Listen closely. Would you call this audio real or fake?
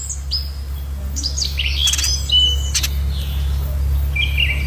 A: real